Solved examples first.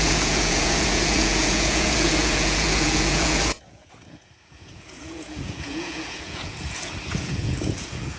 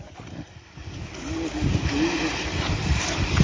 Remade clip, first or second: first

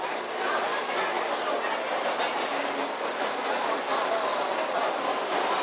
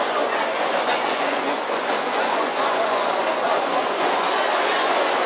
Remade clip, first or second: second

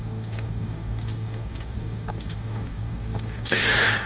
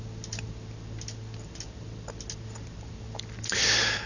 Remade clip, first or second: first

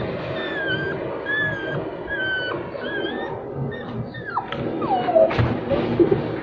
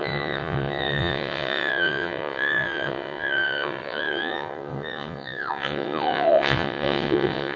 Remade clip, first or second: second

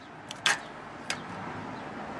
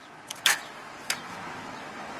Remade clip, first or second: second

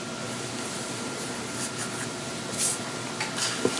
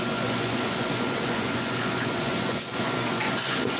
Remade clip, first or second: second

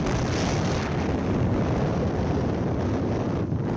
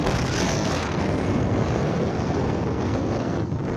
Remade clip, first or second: second